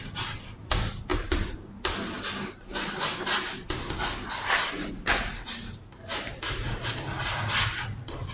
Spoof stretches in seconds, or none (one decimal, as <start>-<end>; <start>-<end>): none